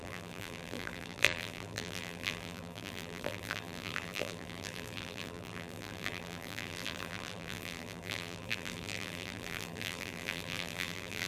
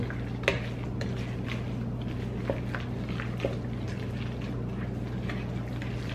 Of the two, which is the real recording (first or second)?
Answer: second